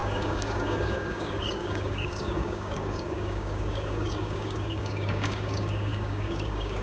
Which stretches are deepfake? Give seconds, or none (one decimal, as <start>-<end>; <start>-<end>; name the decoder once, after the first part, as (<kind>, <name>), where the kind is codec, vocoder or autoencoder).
0.0-6.8 (codec, DAC)